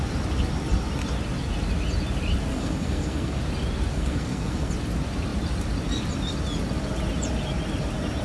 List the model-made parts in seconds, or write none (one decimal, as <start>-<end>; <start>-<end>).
2.5-3.4; 3.9-4.7